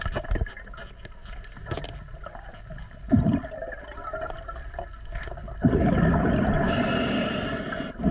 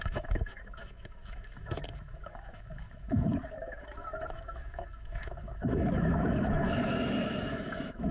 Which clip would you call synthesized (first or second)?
second